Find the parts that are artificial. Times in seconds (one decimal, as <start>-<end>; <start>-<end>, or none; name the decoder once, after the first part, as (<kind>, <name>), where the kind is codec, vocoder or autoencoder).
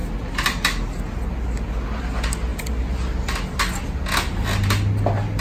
none